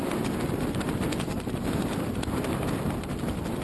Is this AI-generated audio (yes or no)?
no